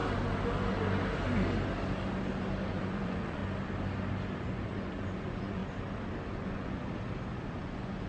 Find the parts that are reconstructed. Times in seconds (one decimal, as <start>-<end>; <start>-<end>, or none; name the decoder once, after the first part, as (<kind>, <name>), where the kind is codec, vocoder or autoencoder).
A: 2.7-3.4 (vocoder, Vocos); 4.4-5.6; 6.3-6.8; 7.6-8.1